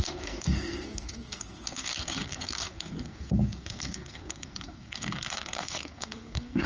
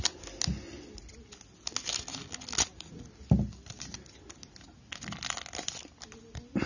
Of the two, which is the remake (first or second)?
first